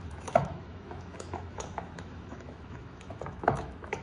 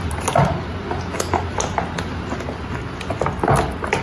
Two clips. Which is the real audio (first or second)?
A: second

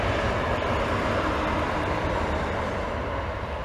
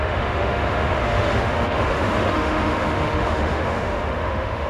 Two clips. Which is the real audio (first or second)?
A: first